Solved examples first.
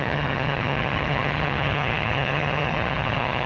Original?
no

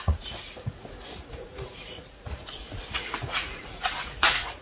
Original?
no